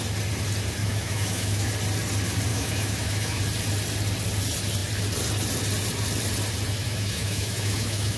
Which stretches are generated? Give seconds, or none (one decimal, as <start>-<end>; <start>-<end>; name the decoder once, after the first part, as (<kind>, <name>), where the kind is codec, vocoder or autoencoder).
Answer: 0.8-1.7 (autoencoder, DAC-VAE); 2.5-3.4; 6.8-8.2